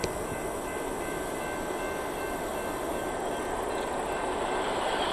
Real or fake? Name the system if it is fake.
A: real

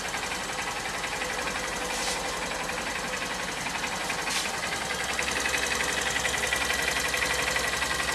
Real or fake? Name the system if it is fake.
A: real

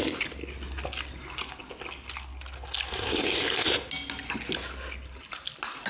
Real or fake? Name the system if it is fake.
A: real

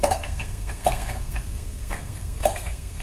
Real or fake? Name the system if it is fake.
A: fake, codec, SNAC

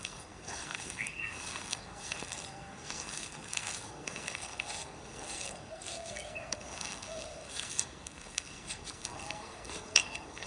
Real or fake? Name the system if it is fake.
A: fake, codec, SNAC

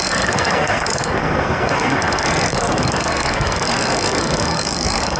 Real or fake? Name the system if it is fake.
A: fake, codec, SNAC